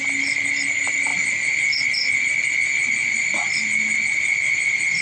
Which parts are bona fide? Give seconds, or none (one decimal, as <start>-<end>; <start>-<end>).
0.0-1.1; 1.8-5.0